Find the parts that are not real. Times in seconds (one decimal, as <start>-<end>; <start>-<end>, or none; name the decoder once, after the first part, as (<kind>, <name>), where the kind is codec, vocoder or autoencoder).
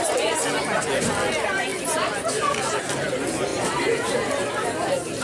3.5-4.3 (vocoder, BigVGAN v2)